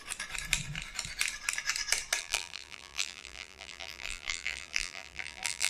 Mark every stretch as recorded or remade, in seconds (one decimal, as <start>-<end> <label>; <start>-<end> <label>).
0.0-2.2 recorded; 2.2-5.7 remade